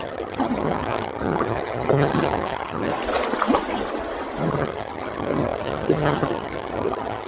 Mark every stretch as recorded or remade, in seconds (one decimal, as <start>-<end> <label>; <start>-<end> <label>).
0.0-2.9 remade; 2.9-4.5 recorded; 4.5-7.3 remade